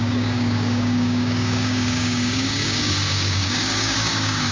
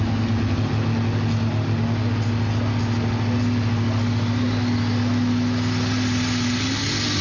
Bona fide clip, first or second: second